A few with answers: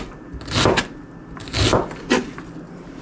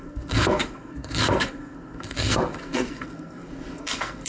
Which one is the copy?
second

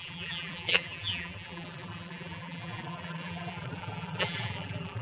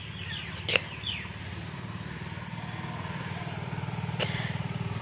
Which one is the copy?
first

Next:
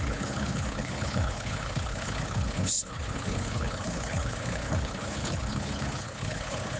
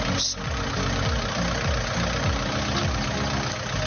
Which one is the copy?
first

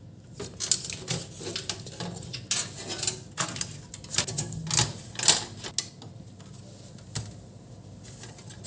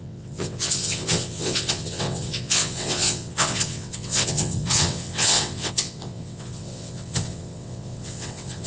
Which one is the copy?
second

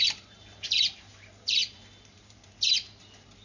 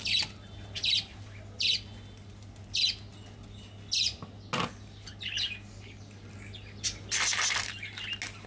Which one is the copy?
first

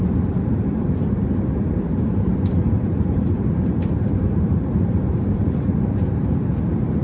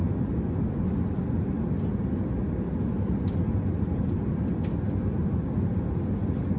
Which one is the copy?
first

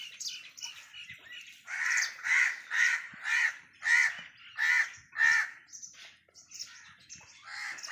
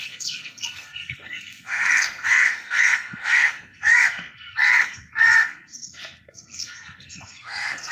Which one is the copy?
second